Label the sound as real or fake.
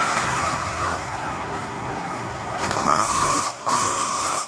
fake